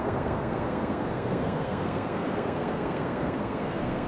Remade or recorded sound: remade